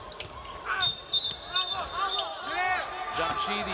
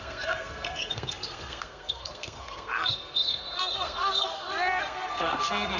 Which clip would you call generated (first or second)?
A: second